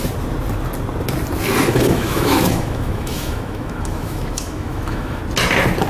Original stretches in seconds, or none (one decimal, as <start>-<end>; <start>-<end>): 0.0-1.7; 5.2-5.9